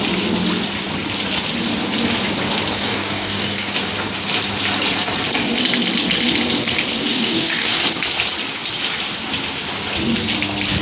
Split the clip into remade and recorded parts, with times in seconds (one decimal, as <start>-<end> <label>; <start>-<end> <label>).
0.0-2.8 recorded; 2.8-3.7 remade; 3.7-7.1 recorded; 7.1-7.8 remade; 7.8-10.8 recorded